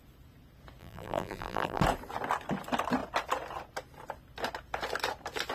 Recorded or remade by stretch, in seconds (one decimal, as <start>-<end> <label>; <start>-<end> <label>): 0.0-0.8 recorded; 0.8-1.8 remade; 1.8-5.5 recorded